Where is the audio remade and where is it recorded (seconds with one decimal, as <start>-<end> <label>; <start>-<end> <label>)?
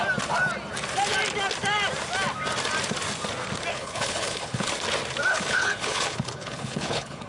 0.0-3.7 recorded; 3.7-4.7 remade; 4.7-5.3 recorded; 5.3-7.3 remade